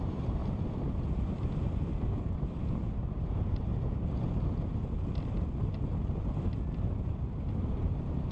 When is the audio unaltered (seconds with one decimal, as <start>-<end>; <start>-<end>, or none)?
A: 0.4-2.1; 3.7-7.9